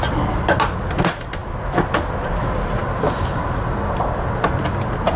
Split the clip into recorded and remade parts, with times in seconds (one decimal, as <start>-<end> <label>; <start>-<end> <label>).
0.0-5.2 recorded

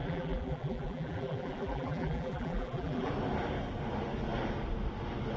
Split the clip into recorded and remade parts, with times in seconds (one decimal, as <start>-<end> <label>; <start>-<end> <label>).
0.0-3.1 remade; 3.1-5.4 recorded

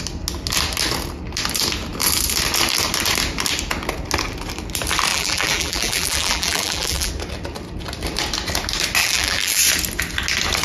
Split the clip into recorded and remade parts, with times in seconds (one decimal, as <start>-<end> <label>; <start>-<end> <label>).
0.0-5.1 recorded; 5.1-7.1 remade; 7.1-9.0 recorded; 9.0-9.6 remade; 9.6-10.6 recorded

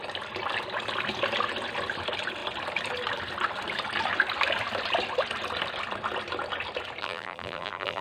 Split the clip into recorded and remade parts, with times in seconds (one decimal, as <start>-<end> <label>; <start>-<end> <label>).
0.0-7.0 recorded; 7.0-8.0 remade

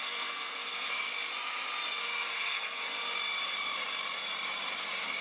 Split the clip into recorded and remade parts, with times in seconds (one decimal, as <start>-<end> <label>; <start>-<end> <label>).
0.0-1.1 remade; 1.1-2.0 recorded; 2.0-3.0 remade; 3.0-5.2 recorded

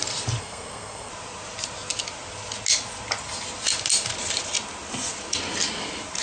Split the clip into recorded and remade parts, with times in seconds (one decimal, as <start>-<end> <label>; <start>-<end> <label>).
0.0-0.4 recorded; 0.4-1.1 remade; 1.1-6.2 recorded